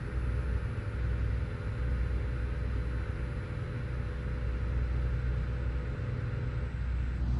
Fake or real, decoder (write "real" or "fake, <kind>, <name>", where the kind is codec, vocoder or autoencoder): real